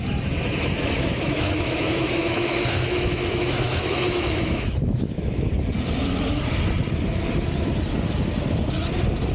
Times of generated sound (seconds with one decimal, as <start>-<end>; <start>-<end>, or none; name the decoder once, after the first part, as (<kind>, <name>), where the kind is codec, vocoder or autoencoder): 0.8-5.5 (autoencoder, DAC-VAE)

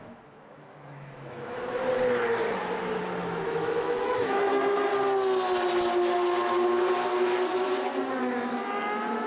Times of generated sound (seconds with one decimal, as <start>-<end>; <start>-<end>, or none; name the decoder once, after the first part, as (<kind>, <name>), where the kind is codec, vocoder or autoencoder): 0.0-1.8 (autoencoder, DAC-VAE); 3.2-4.9; 8.2-9.3